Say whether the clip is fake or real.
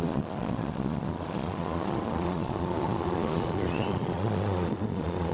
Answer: fake